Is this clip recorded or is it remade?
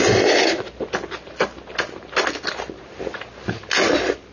recorded